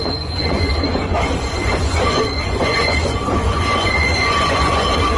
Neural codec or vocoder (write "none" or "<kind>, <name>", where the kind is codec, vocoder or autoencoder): vocoder, Vocos